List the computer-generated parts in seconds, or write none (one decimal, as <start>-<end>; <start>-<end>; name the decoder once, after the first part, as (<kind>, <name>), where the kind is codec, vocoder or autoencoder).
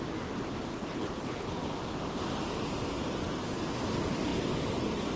0.7-1.6 (codec, HILCodec)